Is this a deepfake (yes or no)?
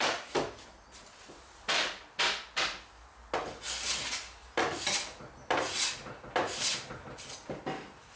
no